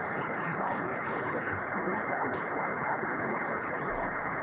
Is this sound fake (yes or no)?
yes